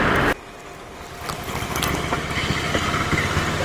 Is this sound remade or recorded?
recorded